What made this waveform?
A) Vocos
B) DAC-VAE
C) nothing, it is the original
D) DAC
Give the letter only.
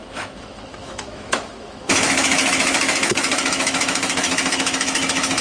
B